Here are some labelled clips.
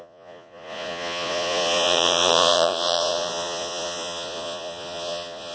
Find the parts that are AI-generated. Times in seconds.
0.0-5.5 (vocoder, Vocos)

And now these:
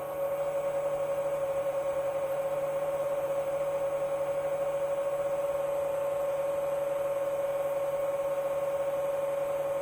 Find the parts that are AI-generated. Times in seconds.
1.4-3.5 (vocoder, BigVGAN v2)

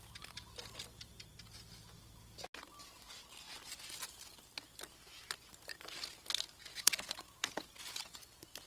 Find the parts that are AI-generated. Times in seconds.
6.7-7.7 (vocoder, Vocos)

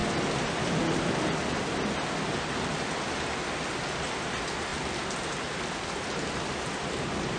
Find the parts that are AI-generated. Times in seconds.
4.3-7.4 (vocoder, BigVGAN v2)

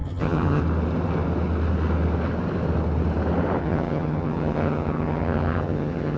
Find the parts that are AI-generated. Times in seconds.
0.0-0.6 (vocoder, HiFi-GAN); 3.6-6.2

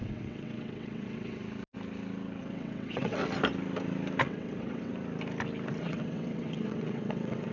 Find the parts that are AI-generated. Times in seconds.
0.0-1.4 (vocoder, WaveNeXt); 2.4-3.2; 4.2-4.9; 5.8-7.5

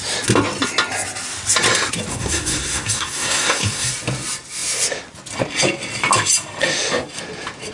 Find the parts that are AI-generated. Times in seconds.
2.1-3.9 (codec, SNAC)

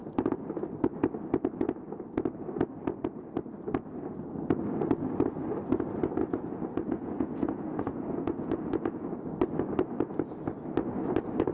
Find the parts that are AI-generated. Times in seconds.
6.2-9.1 (vocoder, Vocos)